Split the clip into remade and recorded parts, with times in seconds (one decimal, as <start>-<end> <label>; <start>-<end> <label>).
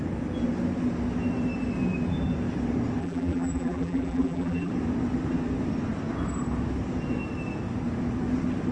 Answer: 0.0-3.0 recorded; 3.0-4.7 remade; 4.7-8.7 recorded